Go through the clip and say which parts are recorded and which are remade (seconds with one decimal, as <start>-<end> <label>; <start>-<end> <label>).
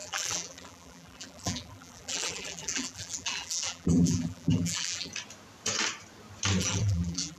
0.0-5.1 remade; 5.1-6.6 recorded; 6.6-7.4 remade